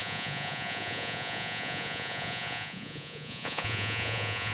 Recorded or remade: remade